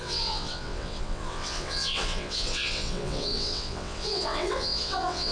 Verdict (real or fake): fake